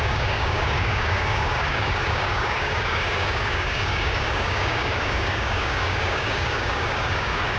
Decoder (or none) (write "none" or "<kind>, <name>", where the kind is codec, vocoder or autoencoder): codec, DAC